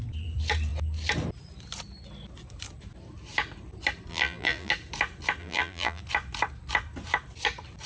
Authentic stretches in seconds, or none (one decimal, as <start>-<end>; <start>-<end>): 0.0-4.1; 4.7-5.4; 6.0-7.9